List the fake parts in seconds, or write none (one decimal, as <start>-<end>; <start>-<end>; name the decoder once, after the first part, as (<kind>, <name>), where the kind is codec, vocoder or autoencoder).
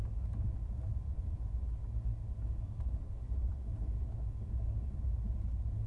none